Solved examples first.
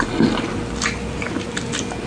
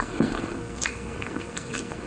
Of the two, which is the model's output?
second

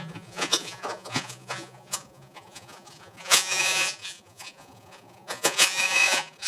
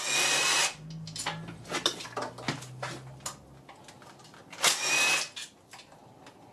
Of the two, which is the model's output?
first